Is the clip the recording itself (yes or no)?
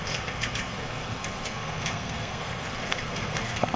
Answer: no